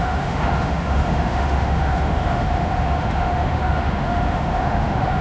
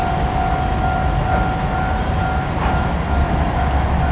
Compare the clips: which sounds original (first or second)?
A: second